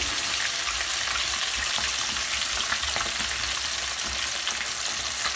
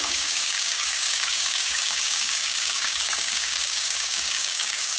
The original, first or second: first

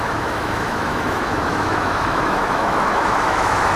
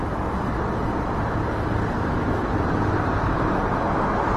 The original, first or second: second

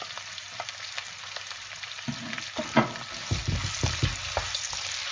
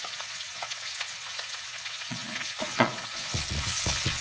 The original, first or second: first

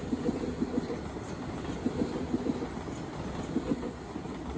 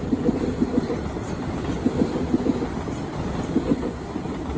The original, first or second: first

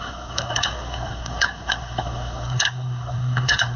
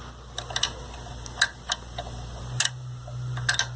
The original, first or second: second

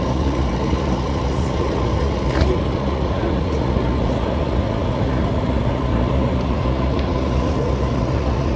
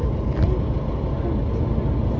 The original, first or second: second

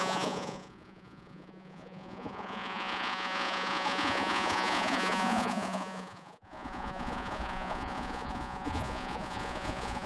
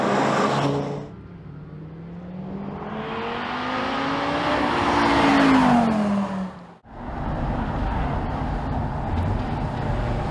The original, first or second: second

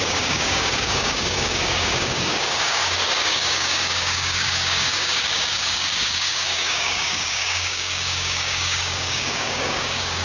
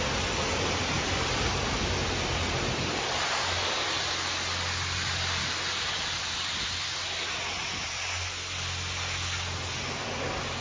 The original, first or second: second